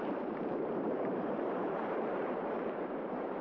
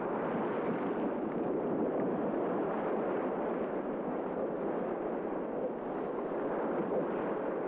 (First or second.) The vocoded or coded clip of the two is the first